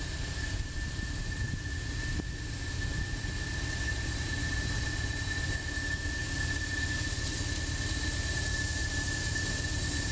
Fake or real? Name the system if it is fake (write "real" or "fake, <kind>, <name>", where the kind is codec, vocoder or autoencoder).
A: real